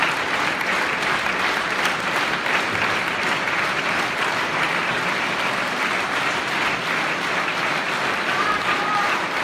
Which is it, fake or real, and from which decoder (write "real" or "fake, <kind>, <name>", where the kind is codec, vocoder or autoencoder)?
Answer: fake, vocoder, BigVGAN v2